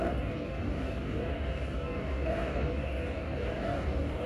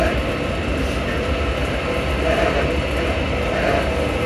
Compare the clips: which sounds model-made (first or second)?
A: first